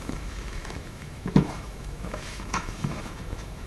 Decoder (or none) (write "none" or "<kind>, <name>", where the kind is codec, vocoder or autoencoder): autoencoder, DAC-VAE